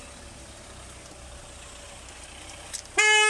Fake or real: real